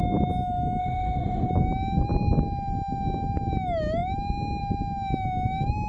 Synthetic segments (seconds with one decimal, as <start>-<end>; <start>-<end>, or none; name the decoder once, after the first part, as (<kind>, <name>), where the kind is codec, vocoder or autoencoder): 0.8-1.5 (autoencoder, DAC-VAE)